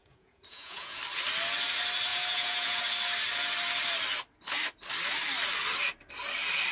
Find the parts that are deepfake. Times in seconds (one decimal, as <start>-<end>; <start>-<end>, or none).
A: 0.0-1.0; 2.1-2.8